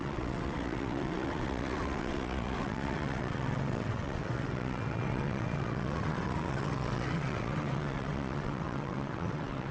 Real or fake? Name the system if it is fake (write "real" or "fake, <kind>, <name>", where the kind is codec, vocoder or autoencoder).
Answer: fake, vocoder, WaveNeXt